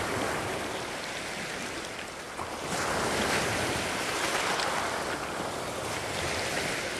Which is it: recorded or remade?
recorded